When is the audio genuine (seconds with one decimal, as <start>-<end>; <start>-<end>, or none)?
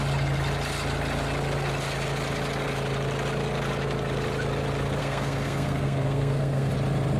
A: 0.0-5.0; 6.7-7.2